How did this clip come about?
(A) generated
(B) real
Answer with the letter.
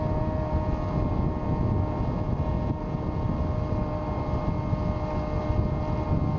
B